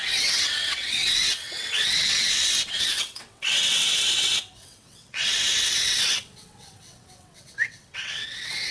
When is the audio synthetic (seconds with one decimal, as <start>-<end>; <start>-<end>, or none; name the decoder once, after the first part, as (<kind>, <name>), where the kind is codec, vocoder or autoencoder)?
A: 0.0-8.7 (vocoder, WaveNeXt)